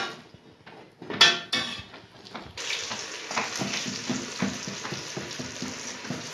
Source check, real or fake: real